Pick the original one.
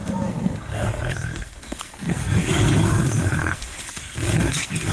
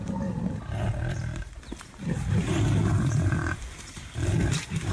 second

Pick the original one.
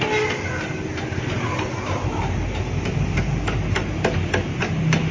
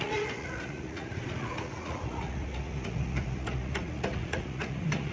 first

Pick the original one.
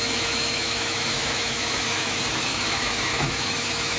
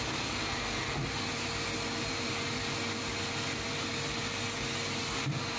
second